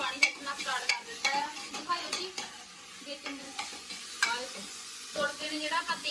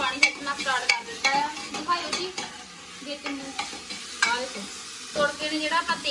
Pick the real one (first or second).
second